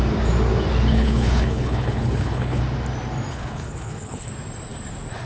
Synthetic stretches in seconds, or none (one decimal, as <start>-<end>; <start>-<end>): 0.9-2.6; 3.3-4.3